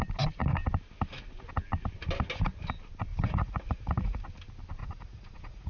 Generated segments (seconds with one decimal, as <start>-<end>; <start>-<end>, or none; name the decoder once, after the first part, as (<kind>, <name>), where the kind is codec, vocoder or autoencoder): 3.1-4.2 (vocoder, Vocos); 4.8-5.7